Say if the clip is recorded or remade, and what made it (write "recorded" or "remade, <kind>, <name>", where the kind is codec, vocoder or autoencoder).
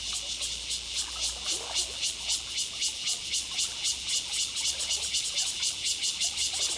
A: recorded